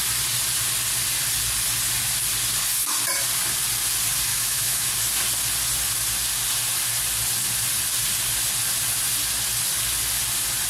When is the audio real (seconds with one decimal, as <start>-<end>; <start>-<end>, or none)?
0.0-4.3; 4.9-10.7